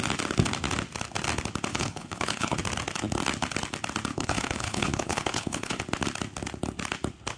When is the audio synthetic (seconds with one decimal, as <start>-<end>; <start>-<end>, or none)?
1.7-2.6; 4.1-5.8